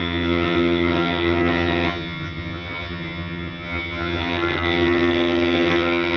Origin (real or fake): fake